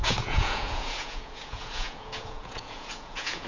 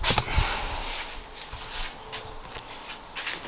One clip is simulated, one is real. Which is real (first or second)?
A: second